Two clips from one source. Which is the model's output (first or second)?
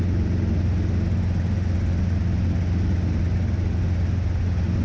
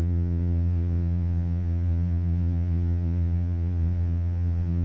second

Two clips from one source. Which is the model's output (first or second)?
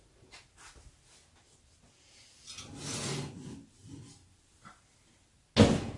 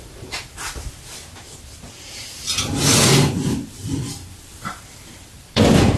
second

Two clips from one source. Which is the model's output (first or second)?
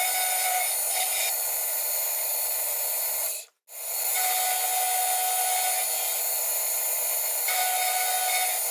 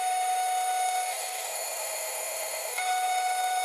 second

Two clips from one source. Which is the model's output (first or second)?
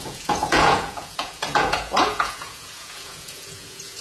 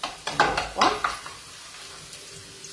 first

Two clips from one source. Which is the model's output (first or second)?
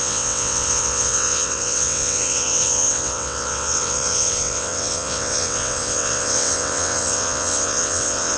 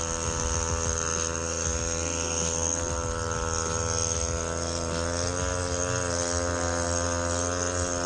first